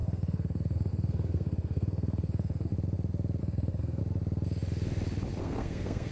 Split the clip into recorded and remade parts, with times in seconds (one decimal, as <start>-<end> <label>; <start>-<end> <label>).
0.0-2.7 remade; 2.7-3.4 recorded; 3.4-4.0 remade; 4.0-5.4 recorded; 5.4-6.1 remade